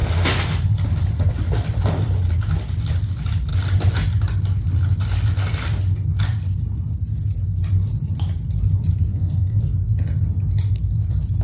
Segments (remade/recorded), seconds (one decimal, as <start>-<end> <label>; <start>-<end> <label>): 0.0-9.1 recorded; 9.1-9.6 remade; 9.6-11.4 recorded